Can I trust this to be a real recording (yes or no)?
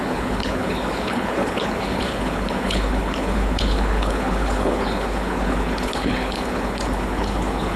no